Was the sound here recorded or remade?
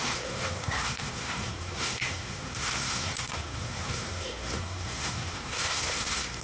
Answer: remade